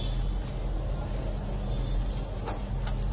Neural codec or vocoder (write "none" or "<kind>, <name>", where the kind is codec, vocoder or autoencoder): none